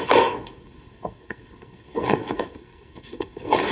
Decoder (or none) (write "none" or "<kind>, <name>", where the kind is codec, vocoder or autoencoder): codec, SNAC